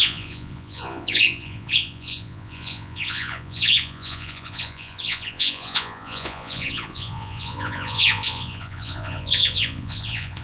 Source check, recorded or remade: remade